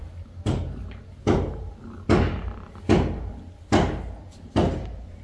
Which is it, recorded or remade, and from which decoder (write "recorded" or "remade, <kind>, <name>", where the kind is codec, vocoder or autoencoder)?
recorded